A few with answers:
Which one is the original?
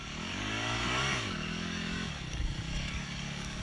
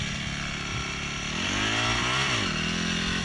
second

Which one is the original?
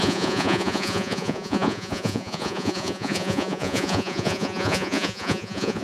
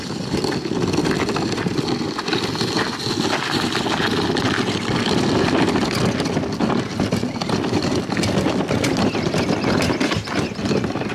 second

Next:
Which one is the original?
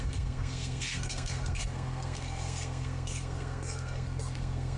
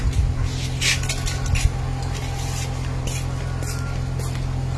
second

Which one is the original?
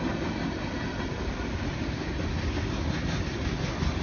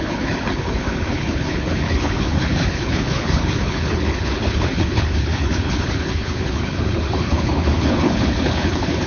first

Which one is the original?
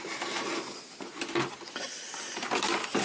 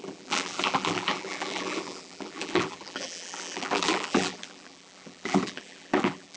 first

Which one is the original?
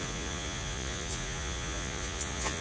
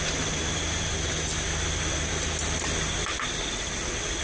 second